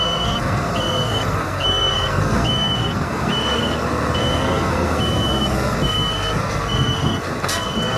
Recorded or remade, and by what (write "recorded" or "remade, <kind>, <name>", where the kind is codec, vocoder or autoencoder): remade, codec, SNAC